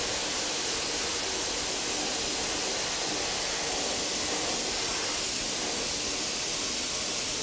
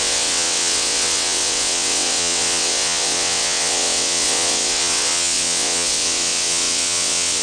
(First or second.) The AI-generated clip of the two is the second